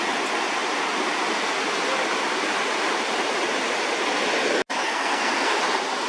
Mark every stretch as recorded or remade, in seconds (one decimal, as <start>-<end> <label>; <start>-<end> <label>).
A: 0.0-4.8 recorded; 4.8-5.6 remade; 5.6-6.1 recorded

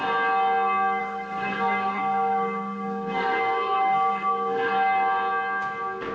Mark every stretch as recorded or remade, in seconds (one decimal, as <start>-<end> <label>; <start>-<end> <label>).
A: 0.0-1.0 recorded; 1.0-4.7 remade; 4.7-6.1 recorded

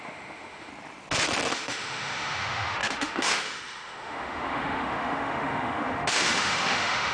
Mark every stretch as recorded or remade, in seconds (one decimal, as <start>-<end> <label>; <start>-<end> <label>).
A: 0.0-0.7 remade; 0.7-1.5 recorded; 1.5-7.1 remade

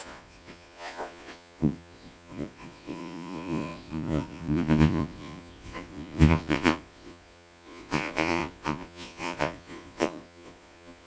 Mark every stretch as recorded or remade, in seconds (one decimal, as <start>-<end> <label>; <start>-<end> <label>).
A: 0.0-11.1 remade

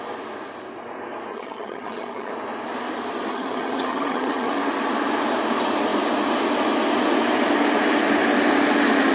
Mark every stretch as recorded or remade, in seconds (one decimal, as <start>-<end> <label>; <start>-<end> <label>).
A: 0.0-1.3 recorded; 1.3-2.3 remade; 2.3-3.3 recorded; 3.3-4.5 remade; 4.5-9.1 recorded